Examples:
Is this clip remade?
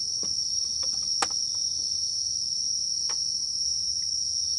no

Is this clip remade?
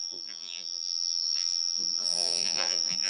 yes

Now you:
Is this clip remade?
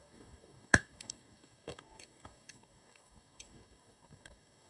yes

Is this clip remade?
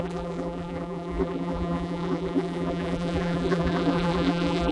yes